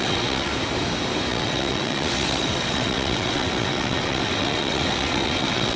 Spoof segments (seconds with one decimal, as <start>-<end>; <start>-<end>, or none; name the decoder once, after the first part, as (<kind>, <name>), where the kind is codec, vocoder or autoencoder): 0.0-0.5 (vocoder, WaveNeXt); 1.3-5.8